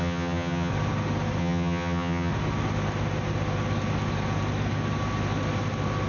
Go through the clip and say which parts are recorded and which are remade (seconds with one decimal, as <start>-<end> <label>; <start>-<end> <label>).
0.0-0.7 remade; 0.7-1.4 recorded; 1.4-2.3 remade; 2.3-6.1 recorded